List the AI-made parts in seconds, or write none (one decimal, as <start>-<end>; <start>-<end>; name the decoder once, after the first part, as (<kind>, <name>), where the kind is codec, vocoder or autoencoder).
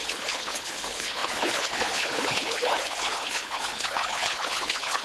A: 0.0-5.0 (codec, HILCodec)